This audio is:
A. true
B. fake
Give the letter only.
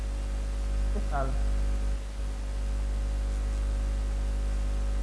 A